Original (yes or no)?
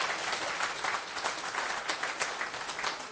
yes